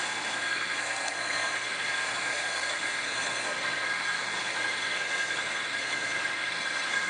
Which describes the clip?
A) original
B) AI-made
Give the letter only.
B